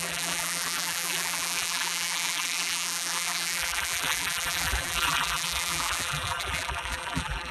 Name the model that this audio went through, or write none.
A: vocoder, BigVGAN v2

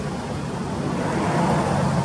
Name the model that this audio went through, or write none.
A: none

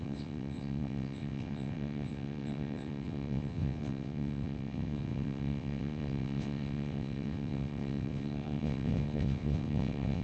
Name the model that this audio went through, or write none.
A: vocoder, WaveNeXt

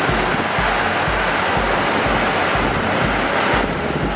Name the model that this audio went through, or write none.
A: none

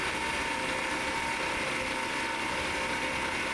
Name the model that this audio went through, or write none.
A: none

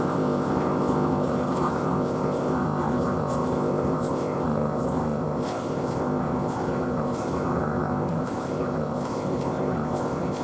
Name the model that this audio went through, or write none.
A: codec, ZipCodec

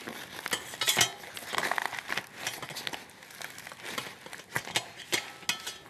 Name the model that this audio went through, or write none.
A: none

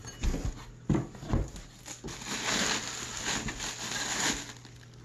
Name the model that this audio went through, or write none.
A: none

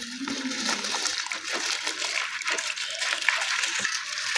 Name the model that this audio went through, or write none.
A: none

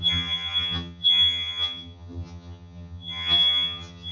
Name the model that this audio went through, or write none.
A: vocoder, HiFi-GAN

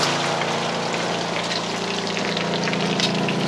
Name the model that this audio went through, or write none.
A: none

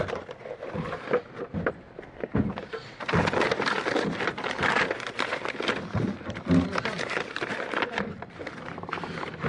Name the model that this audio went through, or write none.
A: none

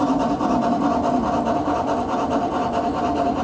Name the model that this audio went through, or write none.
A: none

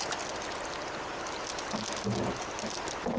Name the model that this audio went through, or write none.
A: none